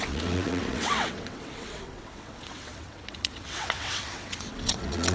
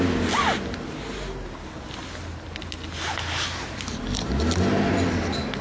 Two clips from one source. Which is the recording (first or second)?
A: second